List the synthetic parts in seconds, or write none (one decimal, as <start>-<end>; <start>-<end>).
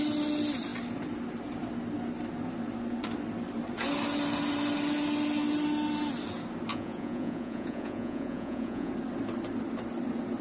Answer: 6.7-8.9